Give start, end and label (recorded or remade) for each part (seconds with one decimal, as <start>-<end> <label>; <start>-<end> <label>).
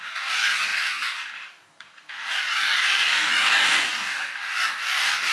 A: 0.0-5.3 remade